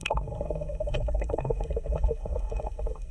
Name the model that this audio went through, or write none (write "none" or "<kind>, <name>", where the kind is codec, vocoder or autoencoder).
codec, SNAC